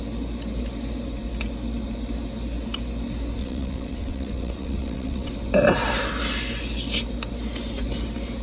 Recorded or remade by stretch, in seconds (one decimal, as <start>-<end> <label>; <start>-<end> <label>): 0.0-3.4 recorded; 3.4-5.3 remade; 5.3-8.4 recorded